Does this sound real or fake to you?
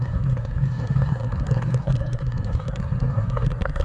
fake